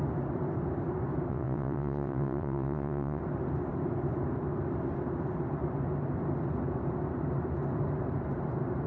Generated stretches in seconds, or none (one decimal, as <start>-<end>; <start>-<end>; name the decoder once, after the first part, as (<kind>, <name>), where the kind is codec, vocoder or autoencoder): 1.3-3.2 (vocoder, WaveNeXt)